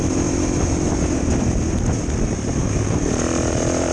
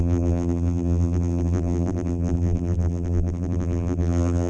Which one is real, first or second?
first